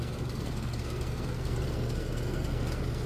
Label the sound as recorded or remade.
remade